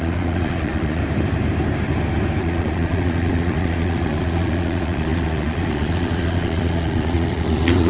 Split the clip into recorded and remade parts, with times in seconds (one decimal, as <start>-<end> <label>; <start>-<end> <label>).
0.0-1.0 remade; 1.0-2.4 recorded; 2.4-7.9 remade